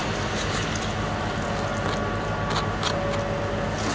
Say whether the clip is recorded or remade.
recorded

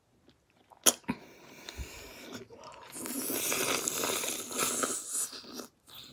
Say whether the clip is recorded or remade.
recorded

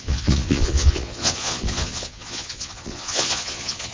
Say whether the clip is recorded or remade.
remade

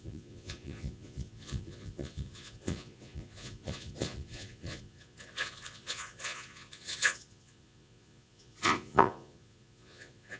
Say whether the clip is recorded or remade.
remade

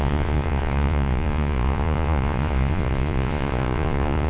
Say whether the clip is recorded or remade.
remade